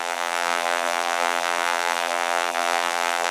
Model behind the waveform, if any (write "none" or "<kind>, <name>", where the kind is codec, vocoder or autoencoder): vocoder, BigVGAN v2